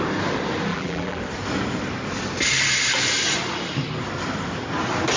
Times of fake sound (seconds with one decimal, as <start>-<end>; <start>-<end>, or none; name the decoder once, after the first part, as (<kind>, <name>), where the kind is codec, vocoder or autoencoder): 0.7-1.2 (vocoder, BigVGAN v2)